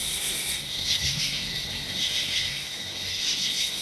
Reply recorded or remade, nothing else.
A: remade